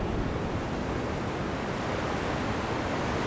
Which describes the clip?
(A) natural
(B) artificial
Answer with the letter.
A